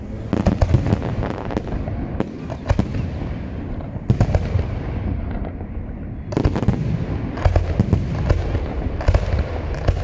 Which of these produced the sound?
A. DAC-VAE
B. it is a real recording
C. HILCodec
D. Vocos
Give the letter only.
B